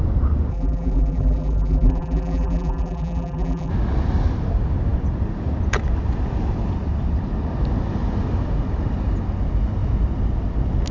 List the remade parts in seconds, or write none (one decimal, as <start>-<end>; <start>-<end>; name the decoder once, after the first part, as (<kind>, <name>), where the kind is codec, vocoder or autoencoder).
0.5-3.7 (vocoder, BigVGAN v2)